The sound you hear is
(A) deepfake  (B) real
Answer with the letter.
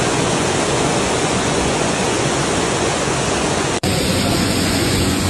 A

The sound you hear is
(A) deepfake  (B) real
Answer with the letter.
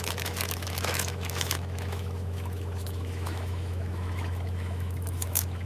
A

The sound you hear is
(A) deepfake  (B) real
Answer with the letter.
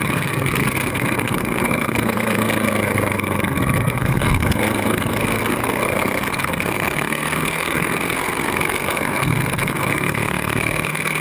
A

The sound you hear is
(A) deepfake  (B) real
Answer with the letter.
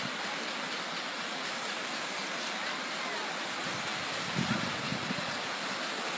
B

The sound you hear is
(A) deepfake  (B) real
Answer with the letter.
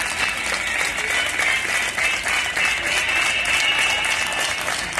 B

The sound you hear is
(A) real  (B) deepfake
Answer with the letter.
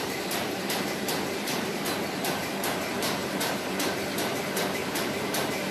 B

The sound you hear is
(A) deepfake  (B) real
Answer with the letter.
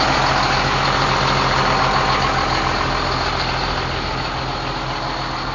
B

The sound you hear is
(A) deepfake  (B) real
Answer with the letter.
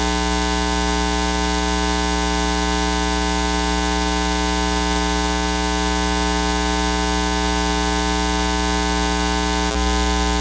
B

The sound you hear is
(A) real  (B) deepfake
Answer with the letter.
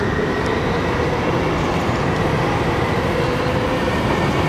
A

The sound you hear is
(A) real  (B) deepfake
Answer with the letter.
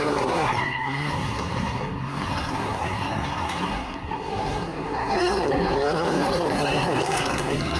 B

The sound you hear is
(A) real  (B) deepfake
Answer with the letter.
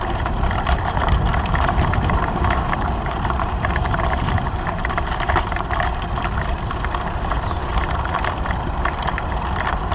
B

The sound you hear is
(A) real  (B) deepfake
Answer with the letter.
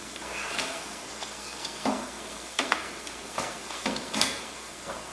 B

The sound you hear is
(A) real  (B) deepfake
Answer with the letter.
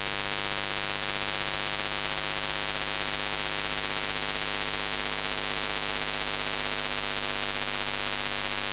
A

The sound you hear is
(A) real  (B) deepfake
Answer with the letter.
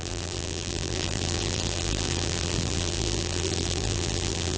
B